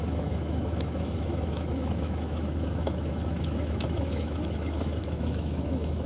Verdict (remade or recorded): remade